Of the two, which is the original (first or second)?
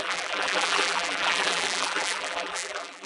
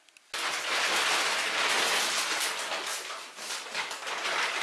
second